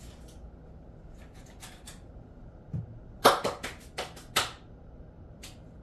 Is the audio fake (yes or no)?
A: no